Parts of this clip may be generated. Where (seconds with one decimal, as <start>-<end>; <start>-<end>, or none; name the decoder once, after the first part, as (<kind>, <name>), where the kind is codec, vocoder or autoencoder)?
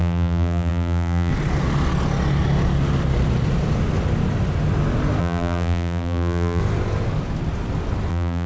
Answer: 0.0-1.3 (vocoder, BigVGAN v2); 5.2-6.6; 8.1-8.5